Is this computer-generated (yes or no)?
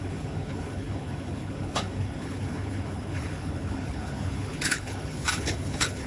yes